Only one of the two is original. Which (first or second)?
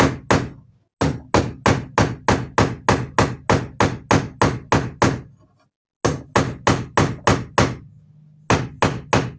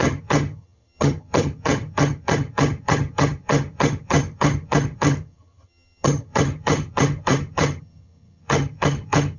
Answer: first